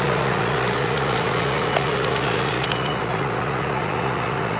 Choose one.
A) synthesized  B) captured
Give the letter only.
A